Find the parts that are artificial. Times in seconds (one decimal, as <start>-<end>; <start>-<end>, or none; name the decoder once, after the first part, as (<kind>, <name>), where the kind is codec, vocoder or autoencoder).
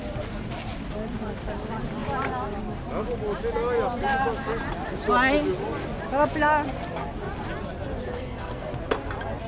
8.1-8.7 (codec, SNAC)